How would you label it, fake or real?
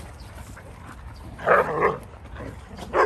real